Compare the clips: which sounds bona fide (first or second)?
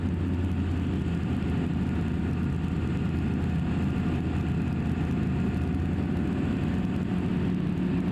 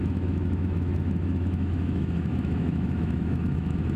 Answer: first